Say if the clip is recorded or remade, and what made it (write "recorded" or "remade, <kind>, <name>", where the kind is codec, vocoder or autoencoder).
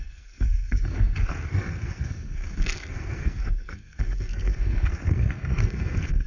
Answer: remade, codec, SNAC